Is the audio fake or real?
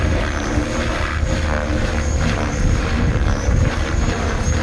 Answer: fake